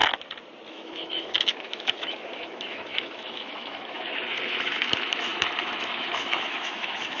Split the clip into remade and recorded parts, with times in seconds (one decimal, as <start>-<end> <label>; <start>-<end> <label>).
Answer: 0.0-0.7 recorded; 0.7-7.2 remade